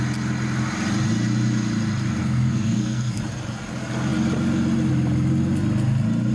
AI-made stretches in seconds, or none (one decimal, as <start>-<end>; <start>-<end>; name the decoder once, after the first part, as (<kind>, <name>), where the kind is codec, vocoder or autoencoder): 2.2-3.2 (codec, SNAC)